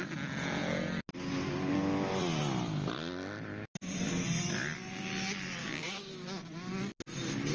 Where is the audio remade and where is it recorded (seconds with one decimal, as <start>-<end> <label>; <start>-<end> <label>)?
0.0-5.6 recorded; 5.6-6.4 remade; 6.4-7.5 recorded